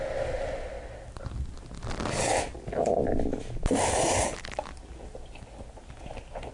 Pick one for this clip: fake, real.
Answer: real